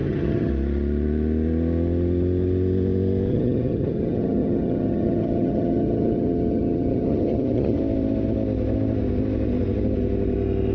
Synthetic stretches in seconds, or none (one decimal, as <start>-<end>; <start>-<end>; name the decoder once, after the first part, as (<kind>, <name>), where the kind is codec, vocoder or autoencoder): 0.0-0.5 (vocoder, HiFi-GAN); 3.3-7.8